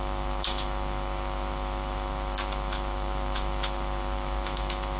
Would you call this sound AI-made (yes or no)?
yes